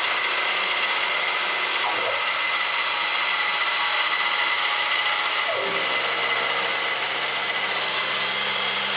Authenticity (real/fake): real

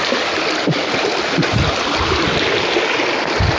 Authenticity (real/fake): real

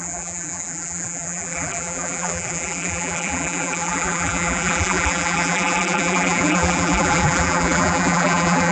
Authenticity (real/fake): fake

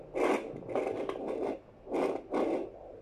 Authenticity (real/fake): real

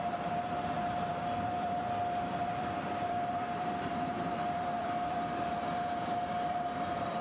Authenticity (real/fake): fake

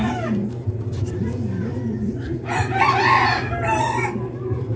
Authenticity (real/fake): fake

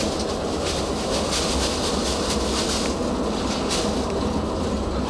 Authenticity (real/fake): real